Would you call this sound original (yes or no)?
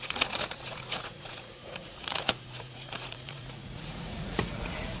no